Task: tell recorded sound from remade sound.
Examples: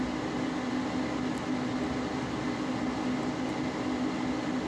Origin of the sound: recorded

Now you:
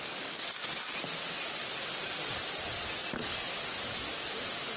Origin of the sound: recorded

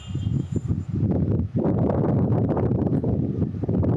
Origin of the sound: recorded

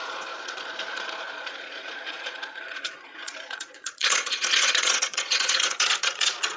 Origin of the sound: remade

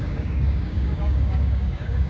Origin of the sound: remade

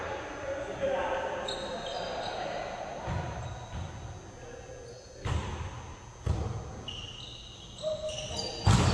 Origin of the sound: recorded